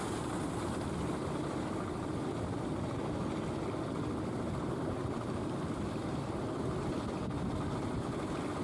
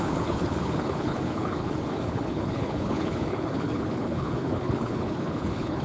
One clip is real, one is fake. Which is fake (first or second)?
second